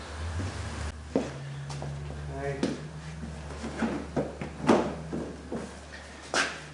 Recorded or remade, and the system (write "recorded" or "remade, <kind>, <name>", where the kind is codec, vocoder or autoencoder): recorded